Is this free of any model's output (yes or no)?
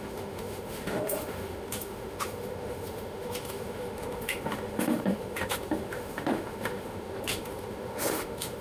no